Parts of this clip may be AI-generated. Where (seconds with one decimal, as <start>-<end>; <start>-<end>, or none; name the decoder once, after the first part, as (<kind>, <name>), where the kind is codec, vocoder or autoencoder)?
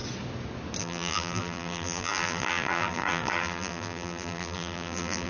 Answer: 0.8-5.3 (vocoder, BigVGAN v2)